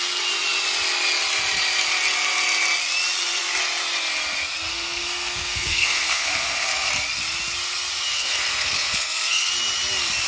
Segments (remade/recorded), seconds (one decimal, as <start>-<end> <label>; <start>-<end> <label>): 0.0-4.7 recorded; 4.7-6.9 remade; 6.9-8.1 recorded; 8.1-9.5 remade; 9.5-10.3 recorded